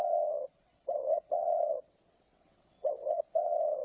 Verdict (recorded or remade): remade